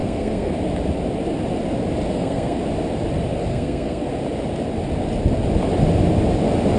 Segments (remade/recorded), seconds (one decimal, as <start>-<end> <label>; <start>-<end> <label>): 0.0-0.5 remade; 0.5-2.1 recorded; 2.1-2.6 remade; 2.6-3.5 recorded; 3.5-4.1 remade; 4.1-6.8 recorded